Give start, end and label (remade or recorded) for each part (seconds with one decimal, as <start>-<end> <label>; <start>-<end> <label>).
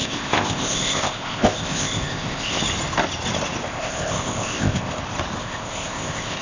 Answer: 0.0-2.6 remade; 2.6-3.6 recorded; 3.6-5.0 remade; 5.0-5.4 recorded; 5.4-6.4 remade